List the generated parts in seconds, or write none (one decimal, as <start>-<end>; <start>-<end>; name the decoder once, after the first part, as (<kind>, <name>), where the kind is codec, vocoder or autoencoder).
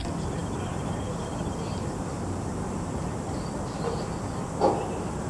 3.0-4.2 (vocoder, BigVGAN v2)